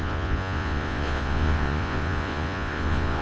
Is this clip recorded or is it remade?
remade